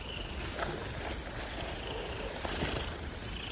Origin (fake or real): real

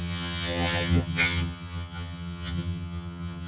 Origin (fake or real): fake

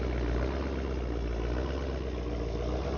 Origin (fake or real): real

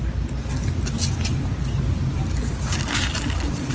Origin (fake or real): real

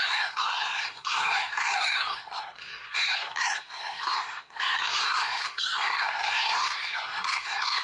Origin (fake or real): fake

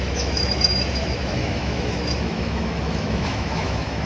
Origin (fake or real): fake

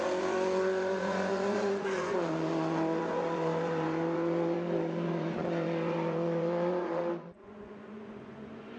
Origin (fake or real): fake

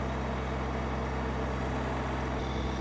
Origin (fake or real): real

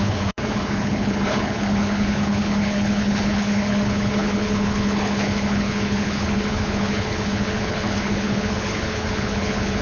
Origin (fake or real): fake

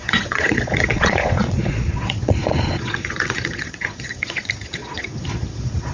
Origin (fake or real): fake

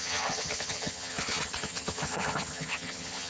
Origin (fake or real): fake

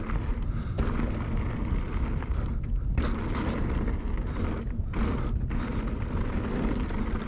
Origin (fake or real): real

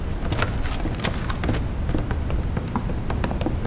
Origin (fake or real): real